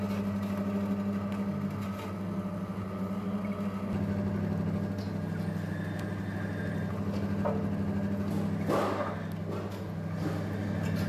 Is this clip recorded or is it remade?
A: recorded